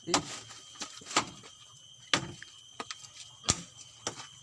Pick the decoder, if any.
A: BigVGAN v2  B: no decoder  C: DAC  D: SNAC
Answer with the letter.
B